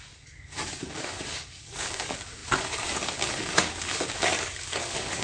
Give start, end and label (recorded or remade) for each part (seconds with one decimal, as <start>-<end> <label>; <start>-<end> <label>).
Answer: 0.0-5.2 remade